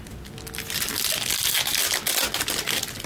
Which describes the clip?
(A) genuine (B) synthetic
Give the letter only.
A